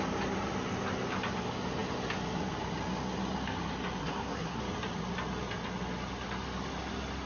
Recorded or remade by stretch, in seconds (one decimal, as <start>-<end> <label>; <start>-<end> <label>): 0.0-4.0 recorded; 4.0-4.6 remade; 4.6-7.3 recorded